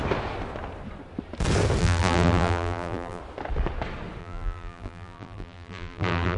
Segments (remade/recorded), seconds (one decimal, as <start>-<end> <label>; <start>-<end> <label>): 0.0-1.8 recorded; 1.8-3.2 remade; 3.2-4.2 recorded; 4.2-6.4 remade